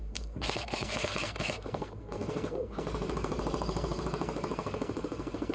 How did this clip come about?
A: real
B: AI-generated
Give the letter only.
B